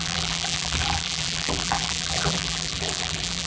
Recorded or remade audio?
remade